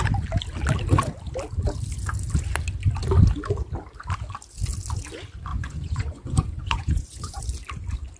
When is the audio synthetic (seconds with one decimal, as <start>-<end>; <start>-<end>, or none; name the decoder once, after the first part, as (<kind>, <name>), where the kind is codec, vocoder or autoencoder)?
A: 5.5-7.4 (vocoder, Vocos)